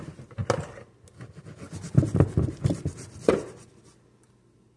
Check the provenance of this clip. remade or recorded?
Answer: recorded